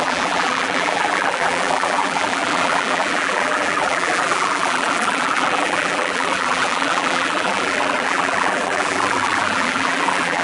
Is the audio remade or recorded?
remade